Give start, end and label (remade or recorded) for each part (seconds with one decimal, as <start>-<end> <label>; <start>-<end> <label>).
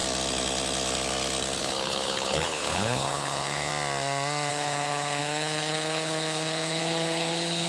0.0-1.6 recorded; 1.6-3.7 remade; 3.7-4.5 recorded; 4.5-7.7 remade